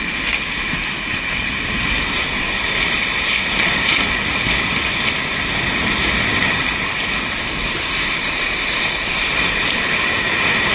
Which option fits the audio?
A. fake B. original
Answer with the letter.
B